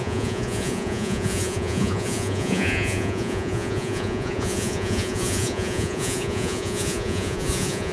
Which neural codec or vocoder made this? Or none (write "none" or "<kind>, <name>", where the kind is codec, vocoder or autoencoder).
vocoder, Vocos